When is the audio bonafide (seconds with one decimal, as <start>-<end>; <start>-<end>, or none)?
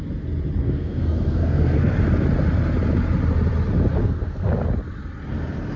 0.0-0.6; 1.9-4.0; 4.5-5.8